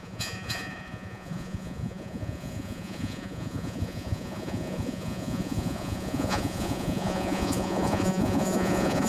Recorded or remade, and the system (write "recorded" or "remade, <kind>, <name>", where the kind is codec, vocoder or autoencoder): remade, vocoder, Vocos